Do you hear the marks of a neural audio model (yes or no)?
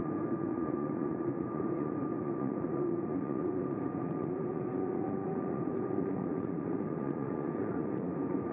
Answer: yes